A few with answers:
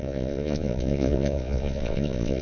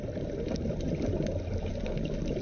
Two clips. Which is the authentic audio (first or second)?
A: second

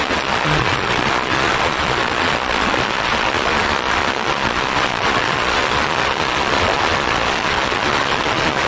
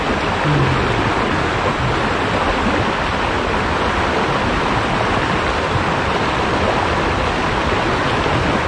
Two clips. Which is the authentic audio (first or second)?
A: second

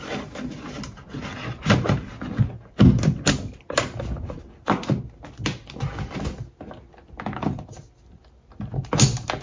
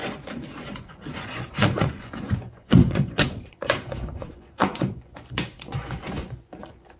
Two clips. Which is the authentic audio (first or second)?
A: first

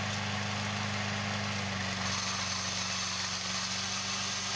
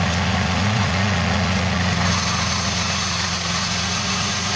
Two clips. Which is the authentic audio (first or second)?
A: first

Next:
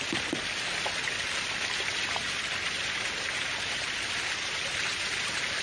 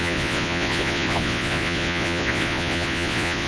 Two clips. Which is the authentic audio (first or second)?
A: first